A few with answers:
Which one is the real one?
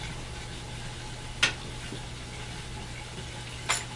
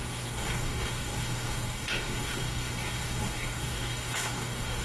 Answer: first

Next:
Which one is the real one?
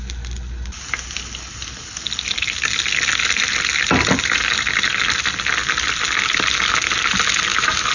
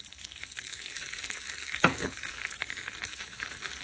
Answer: first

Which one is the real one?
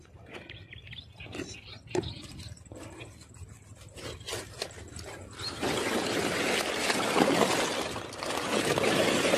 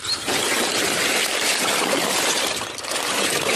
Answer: first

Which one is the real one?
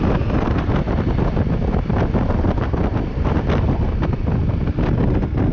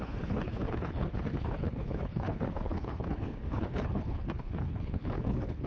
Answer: first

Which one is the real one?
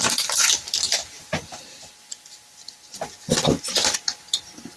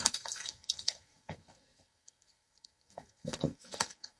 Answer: first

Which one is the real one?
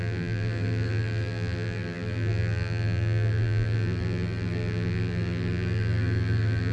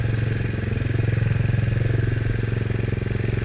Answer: second